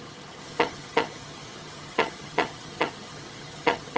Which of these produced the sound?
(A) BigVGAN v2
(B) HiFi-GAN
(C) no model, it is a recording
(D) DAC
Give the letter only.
B